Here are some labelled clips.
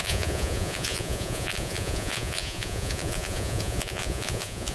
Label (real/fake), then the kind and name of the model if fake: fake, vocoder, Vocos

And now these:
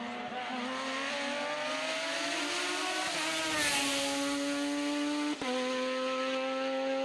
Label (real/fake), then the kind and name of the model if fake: real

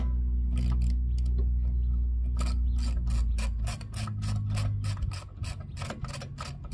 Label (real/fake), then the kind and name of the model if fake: real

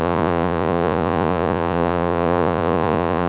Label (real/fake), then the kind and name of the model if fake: fake, vocoder, Vocos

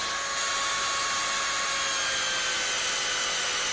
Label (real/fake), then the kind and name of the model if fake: real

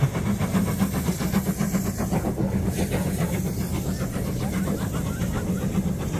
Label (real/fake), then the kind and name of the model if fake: real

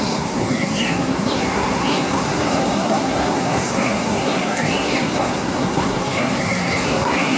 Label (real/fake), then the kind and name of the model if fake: fake, codec, SNAC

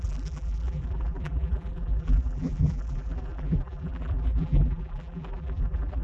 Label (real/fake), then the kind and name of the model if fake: fake, vocoder, BigVGAN v2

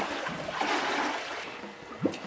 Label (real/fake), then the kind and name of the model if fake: real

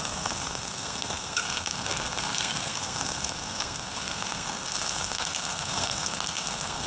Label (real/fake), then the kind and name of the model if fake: fake, codec, SNAC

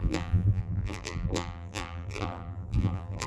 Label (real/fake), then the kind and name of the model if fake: fake, vocoder, BigVGAN v2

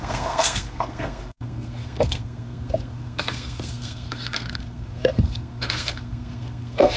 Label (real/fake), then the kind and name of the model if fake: fake, codec, SNAC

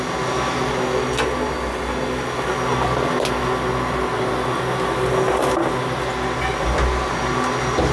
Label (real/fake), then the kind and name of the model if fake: real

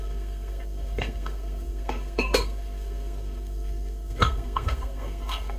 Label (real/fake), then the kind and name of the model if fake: fake, codec, SNAC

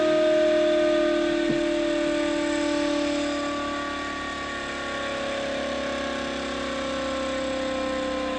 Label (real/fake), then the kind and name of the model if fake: real